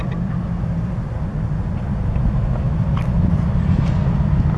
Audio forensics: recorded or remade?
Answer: remade